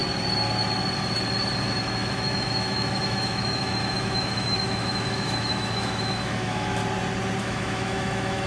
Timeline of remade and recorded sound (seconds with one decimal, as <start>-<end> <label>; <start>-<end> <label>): 0.0-1.8 recorded; 1.8-6.8 remade; 6.8-7.4 recorded; 7.4-8.5 remade